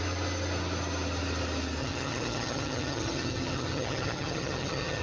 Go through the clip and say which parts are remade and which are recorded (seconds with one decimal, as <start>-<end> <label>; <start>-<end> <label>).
0.0-1.8 recorded; 1.8-5.0 remade